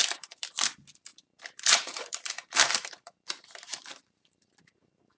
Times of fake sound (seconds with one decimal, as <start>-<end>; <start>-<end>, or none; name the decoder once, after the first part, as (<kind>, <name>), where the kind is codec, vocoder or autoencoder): 0.0-0.5 (vocoder, BigVGAN v2); 1.1-4.2